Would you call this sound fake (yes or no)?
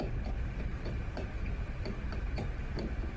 no